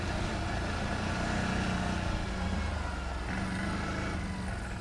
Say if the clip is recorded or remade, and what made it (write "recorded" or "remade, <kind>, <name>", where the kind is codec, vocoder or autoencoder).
recorded